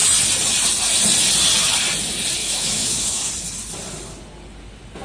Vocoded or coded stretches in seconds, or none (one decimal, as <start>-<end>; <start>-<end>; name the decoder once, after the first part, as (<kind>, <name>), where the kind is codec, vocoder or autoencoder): 2.4-3.3 (autoencoder, DAC-VAE)